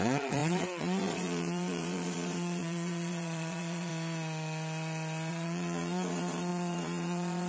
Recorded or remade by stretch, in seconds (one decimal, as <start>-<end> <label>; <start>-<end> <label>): 0.0-3.9 remade; 3.9-5.3 recorded; 5.3-7.5 remade